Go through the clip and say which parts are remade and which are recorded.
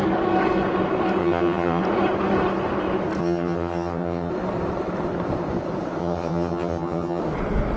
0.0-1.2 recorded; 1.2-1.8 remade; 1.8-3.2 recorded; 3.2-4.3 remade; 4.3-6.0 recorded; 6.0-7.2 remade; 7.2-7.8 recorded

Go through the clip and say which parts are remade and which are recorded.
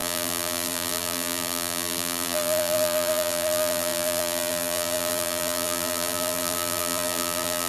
0.0-7.7 remade